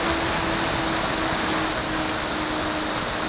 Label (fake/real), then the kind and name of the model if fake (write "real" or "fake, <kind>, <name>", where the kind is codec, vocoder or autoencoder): real